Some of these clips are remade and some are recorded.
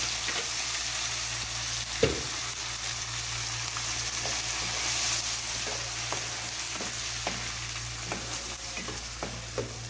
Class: recorded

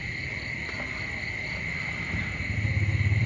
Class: recorded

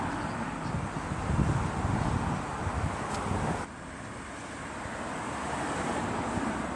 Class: recorded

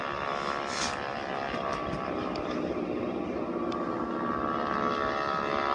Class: recorded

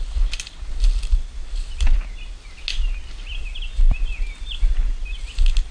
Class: recorded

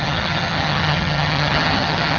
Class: remade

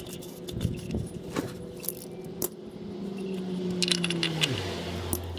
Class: recorded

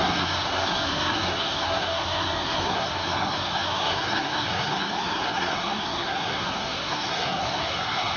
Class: remade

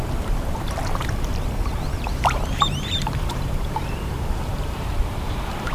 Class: remade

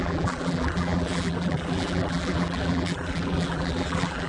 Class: remade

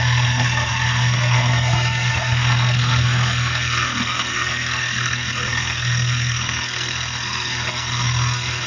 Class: remade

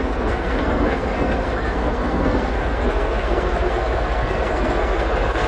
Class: remade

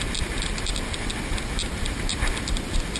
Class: recorded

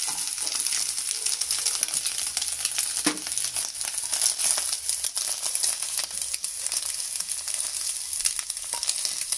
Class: recorded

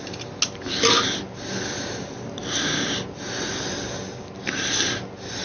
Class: recorded